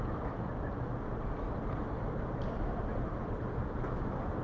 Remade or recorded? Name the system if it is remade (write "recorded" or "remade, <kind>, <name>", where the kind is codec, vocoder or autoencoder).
recorded